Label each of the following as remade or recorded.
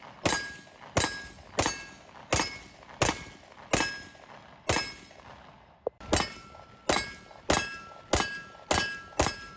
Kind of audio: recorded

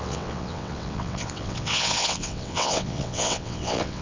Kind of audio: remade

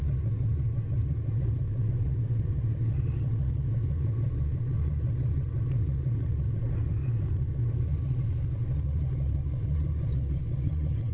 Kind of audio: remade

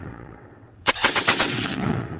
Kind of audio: remade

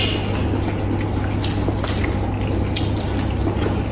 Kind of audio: recorded